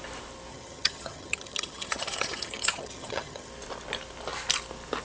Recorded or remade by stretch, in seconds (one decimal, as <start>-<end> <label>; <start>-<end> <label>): 0.0-0.5 recorded; 0.5-3.5 remade; 3.5-5.0 recorded